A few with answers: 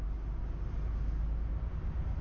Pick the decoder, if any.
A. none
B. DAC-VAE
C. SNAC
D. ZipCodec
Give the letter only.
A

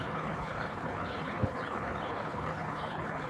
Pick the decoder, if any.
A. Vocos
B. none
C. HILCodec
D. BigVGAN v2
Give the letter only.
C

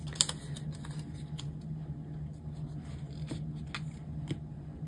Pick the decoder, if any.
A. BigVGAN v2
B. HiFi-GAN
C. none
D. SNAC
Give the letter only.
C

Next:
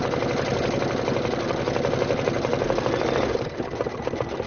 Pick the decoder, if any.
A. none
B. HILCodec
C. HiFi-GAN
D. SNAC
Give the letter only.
A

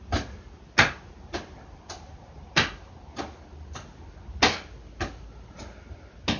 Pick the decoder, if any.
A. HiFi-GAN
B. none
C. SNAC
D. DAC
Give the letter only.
B